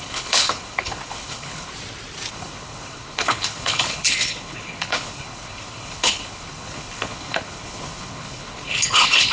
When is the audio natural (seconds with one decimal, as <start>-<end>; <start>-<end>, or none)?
1.7-2.3